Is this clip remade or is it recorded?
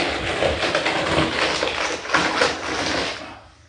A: recorded